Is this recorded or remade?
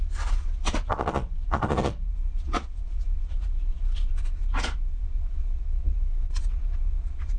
remade